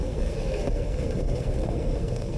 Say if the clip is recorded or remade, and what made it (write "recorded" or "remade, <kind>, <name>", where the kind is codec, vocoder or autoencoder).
remade, codec, SNAC